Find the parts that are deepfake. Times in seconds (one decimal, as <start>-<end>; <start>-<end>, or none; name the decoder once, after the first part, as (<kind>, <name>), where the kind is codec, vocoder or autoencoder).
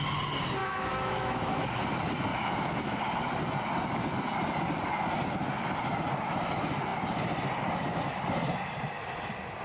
0.6-1.7 (autoencoder, DAC-VAE); 2.3-3.0